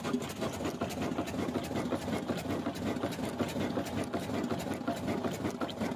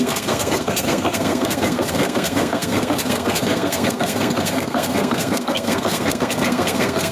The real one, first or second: first